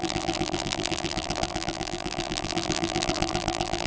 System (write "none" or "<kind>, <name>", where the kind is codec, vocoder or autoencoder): vocoder, BigVGAN v2